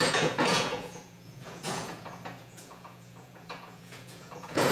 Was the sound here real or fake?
fake